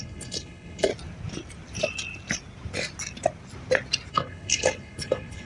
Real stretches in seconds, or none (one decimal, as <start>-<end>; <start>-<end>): 0.9-4.1